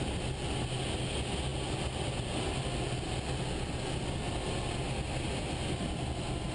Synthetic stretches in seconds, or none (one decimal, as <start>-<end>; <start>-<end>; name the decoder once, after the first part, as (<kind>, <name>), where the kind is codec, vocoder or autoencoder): none